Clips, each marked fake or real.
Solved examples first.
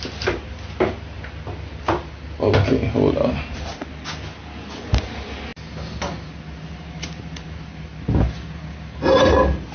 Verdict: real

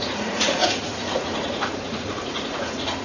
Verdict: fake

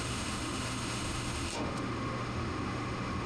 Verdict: fake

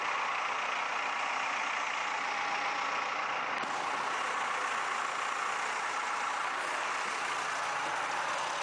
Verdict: real